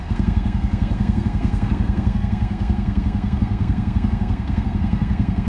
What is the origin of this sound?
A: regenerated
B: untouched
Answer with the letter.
A